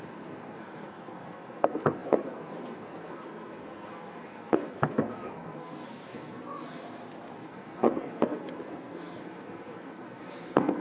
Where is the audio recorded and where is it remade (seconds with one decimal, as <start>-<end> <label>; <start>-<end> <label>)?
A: 0.0-6.8 remade; 6.8-7.3 recorded; 7.3-10.8 remade

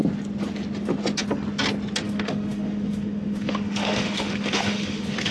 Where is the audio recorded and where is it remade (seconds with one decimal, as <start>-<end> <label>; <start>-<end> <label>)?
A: 0.0-2.0 recorded; 2.0-5.3 remade

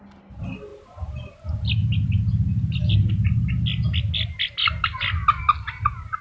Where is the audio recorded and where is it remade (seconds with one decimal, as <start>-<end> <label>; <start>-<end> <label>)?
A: 0.0-6.2 recorded

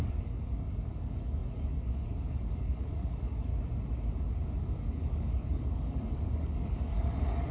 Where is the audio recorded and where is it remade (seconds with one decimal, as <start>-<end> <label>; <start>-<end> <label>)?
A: 0.0-3.5 remade; 3.5-4.8 recorded; 4.8-7.5 remade

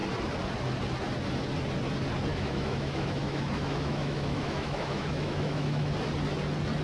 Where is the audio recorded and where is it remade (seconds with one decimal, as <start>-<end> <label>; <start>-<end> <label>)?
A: 0.0-2.3 recorded; 2.3-5.9 remade; 5.9-6.8 recorded

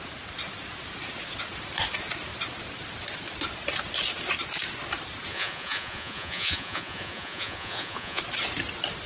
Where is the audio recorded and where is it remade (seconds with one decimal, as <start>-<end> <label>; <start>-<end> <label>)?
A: 0.0-5.3 recorded; 5.3-8.2 remade; 8.2-9.1 recorded

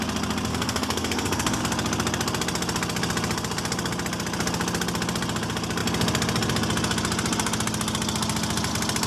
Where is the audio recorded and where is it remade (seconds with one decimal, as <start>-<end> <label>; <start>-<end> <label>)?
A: 0.0-0.5 recorded; 0.5-1.6 remade; 1.6-9.1 recorded